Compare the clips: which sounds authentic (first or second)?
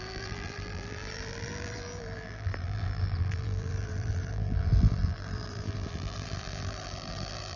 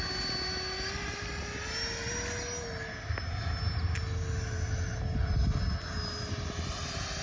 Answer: second